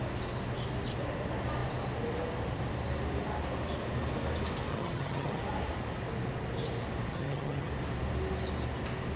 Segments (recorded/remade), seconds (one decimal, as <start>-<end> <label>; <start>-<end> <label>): 0.0-4.7 recorded; 4.7-5.4 remade; 5.4-7.1 recorded; 7.1-7.7 remade; 7.7-9.2 recorded